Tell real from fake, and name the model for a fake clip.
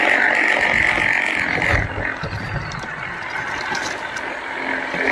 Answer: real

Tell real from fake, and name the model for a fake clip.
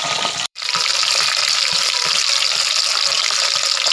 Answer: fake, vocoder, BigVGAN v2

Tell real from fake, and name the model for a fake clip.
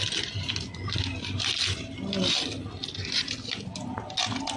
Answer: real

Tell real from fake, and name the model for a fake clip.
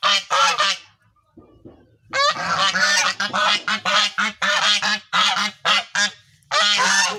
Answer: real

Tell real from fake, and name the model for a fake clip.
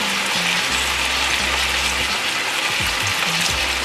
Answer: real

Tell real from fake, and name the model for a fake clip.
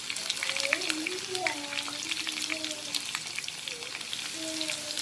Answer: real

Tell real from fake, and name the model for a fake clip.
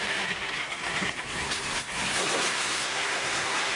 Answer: fake, codec, SNAC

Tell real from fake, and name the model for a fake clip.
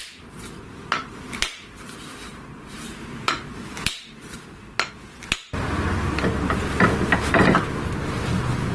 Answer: real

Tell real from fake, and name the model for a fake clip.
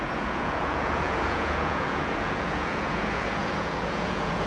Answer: fake, vocoder, Vocos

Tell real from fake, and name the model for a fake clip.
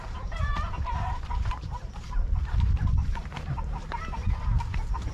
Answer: fake, vocoder, BigVGAN v2